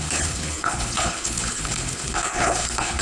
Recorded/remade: remade